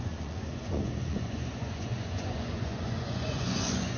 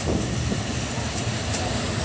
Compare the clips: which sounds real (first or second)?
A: second